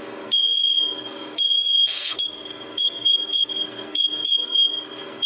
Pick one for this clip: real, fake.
fake